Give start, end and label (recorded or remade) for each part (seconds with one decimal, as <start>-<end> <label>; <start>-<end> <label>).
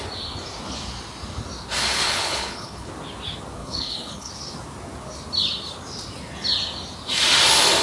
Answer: 0.0-1.9 recorded; 1.9-2.9 remade; 2.9-3.6 recorded; 3.6-4.3 remade; 4.3-7.8 recorded